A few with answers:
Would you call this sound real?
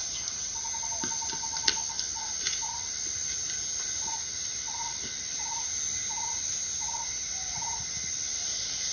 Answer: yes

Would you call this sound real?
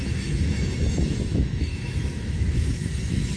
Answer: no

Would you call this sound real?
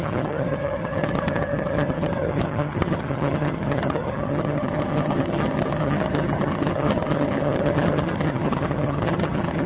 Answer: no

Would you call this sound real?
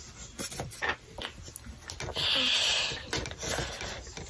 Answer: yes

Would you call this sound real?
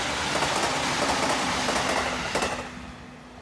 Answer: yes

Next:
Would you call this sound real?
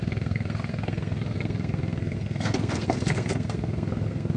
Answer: no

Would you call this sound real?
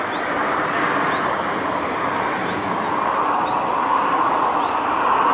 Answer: yes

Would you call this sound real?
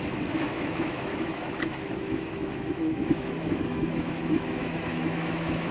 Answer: no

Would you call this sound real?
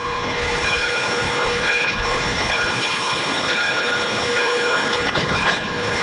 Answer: no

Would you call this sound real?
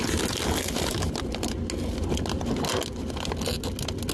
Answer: yes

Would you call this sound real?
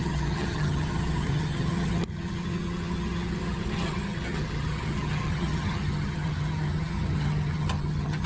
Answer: no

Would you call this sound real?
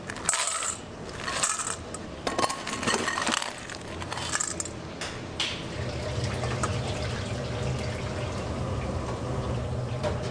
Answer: yes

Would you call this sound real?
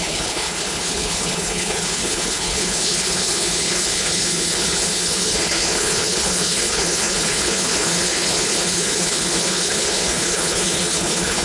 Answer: no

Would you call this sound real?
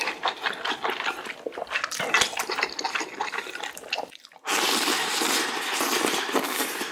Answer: no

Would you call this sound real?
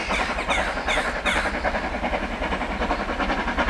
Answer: yes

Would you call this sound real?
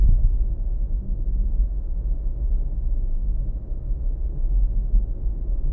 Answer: no